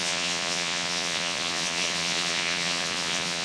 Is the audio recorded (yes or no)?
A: no